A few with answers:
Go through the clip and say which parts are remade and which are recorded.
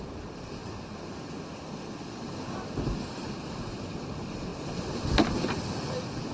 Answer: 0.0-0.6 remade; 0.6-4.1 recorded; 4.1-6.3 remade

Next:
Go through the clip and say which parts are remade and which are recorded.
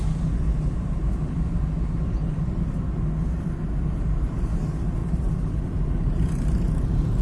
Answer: 0.0-5.0 recorded; 5.0-5.7 remade; 5.7-7.2 recorded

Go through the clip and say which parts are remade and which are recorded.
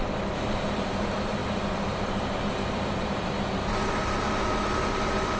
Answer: 0.0-5.4 remade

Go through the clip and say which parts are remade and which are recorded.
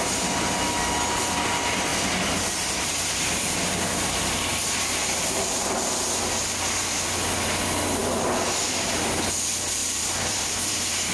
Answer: 0.0-9.8 recorded; 9.8-11.1 remade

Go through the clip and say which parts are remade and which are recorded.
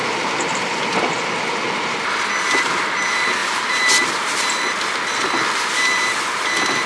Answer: 0.0-3.4 recorded; 3.4-4.5 remade; 4.5-6.9 recorded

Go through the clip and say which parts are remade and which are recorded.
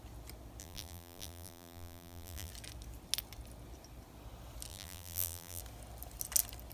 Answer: 0.0-0.6 recorded; 0.6-2.5 remade; 2.5-4.7 recorded; 4.7-5.6 remade; 5.6-6.7 recorded